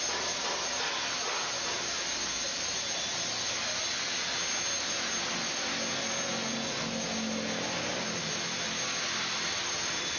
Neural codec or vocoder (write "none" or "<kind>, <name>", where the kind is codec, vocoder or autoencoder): none